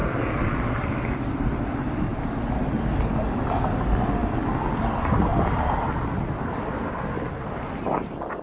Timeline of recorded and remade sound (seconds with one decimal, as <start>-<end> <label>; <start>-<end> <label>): 0.0-8.4 recorded